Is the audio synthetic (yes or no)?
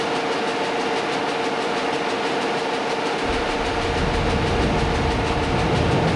no